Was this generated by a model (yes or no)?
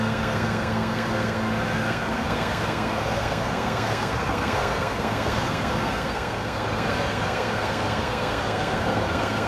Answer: yes